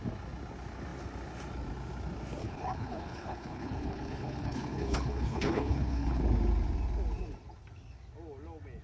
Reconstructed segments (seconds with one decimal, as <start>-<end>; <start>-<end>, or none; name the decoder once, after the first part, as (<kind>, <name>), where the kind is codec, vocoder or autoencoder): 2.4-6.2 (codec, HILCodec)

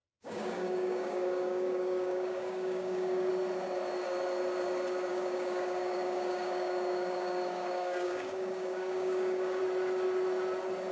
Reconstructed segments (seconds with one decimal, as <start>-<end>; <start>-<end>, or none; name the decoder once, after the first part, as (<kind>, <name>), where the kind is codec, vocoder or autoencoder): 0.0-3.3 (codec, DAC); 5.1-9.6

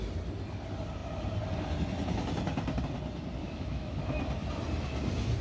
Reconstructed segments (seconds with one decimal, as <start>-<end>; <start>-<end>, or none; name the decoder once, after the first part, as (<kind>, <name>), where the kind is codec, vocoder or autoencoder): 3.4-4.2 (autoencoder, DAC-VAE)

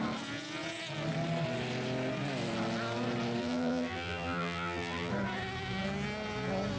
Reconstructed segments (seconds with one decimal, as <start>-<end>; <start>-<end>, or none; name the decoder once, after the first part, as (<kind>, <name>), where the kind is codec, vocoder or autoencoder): 3.4-5.1 (vocoder, BigVGAN v2)

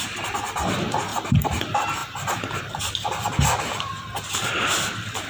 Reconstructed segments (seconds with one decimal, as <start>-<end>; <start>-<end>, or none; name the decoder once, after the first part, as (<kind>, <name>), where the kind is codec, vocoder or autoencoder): 1.1-1.6 (vocoder, BigVGAN v2); 2.0-2.6

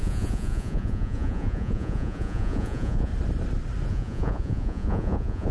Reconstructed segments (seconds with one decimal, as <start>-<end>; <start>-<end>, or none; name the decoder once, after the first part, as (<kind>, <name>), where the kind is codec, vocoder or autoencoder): 0.0-3.1 (vocoder, Vocos); 3.9-5.5

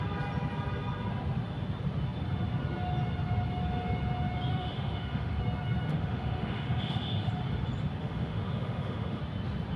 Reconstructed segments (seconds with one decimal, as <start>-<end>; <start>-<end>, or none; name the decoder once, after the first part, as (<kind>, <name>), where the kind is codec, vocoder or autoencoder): 4.5-5.4 (autoencoder, DAC-VAE); 5.9-7.3; 8.0-9.2

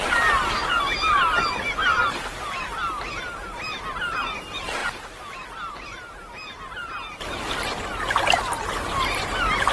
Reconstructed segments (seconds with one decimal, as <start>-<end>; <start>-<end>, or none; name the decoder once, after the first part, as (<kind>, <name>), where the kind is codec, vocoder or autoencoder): none